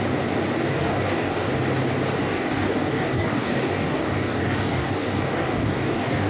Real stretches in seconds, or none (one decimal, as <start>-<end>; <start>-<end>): 0.0-0.8; 1.5-2.2